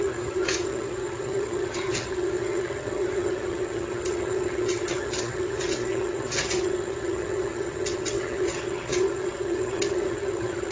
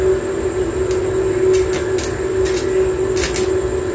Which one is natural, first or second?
second